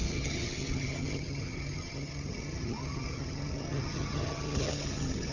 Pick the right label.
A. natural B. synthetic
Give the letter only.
B